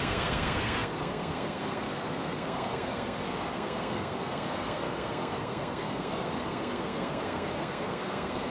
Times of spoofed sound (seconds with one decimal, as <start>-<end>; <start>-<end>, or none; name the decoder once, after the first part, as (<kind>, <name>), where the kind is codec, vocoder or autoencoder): 0.0-8.5 (codec, SNAC)